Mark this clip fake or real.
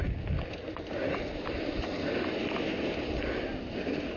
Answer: real